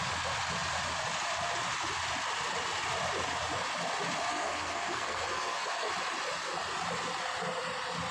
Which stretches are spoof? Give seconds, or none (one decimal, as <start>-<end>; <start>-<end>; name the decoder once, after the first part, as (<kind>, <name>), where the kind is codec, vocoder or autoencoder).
4.3-5.9 (codec, SNAC)